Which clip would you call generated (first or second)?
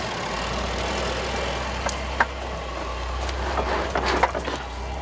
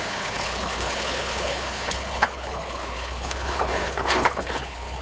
second